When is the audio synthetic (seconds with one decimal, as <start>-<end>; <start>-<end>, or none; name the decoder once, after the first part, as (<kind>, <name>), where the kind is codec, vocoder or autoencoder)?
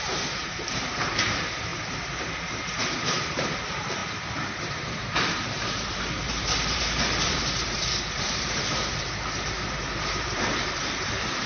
0.0-1.7 (vocoder, BigVGAN v2); 2.2-11.5